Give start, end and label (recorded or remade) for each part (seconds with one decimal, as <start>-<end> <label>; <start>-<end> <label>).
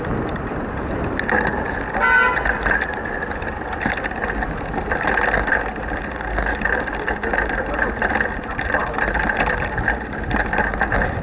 0.0-11.2 recorded